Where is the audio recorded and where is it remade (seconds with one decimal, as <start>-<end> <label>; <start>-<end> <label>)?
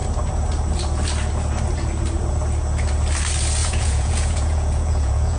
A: 0.0-3.6 recorded; 3.6-5.4 remade